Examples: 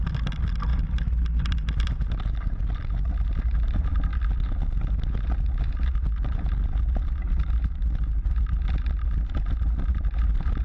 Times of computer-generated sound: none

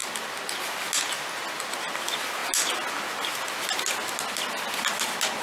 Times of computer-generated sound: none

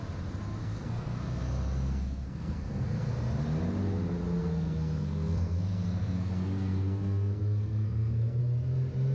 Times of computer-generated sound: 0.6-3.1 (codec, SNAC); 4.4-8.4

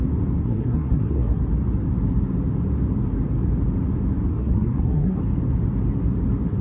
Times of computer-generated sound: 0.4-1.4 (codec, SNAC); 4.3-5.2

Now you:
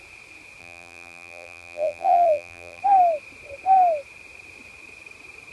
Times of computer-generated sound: 0.6-2.8 (vocoder, BigVGAN v2)

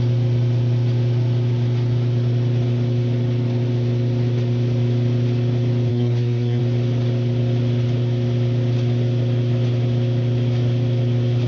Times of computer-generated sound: 5.9-6.6 (codec, SNAC)

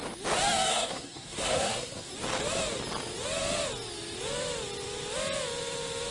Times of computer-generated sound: 0.7-2.1 (codec, SNAC)

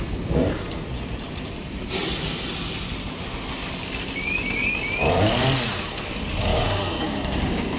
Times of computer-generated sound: 6.5-7.8 (codec, DAC)